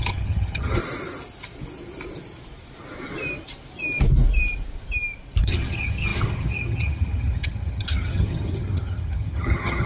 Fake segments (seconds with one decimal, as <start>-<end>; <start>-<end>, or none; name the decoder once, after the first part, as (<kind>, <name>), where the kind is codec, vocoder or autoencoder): 0.0-0.8 (vocoder, HiFi-GAN); 5.4-9.9